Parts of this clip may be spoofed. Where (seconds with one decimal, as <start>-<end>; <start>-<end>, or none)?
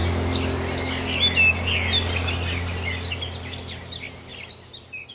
none